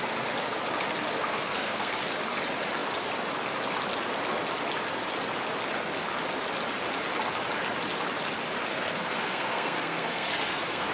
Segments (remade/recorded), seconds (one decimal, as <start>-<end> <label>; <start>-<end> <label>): 0.0-1.2 recorded; 1.2-1.9 remade; 1.9-8.7 recorded; 8.7-10.9 remade